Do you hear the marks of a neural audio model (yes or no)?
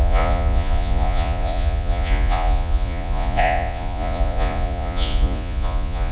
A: yes